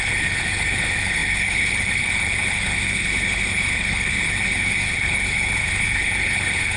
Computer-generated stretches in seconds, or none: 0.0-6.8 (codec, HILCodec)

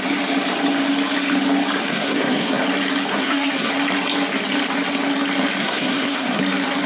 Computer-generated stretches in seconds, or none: 1.9-2.6 (codec, SNAC); 3.1-3.7; 5.6-6.4

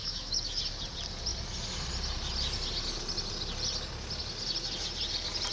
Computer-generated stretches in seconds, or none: 0.0-0.6 (autoencoder, DAC-VAE)

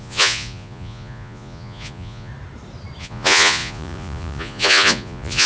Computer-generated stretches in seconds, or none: 0.0-2.3 (vocoder, Vocos); 3.0-5.5

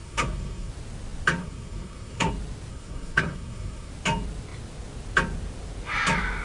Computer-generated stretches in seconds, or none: 0.0-0.7 (codec, SNAC); 1.4-2.3; 2.7-3.9